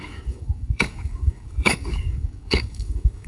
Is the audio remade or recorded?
remade